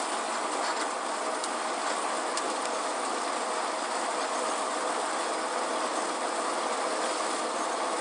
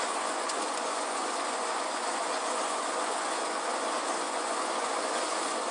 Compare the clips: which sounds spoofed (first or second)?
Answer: second